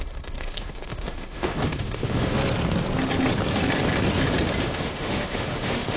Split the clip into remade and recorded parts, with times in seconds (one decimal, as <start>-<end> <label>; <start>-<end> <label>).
0.0-2.4 remade; 2.4-4.6 recorded; 4.6-6.0 remade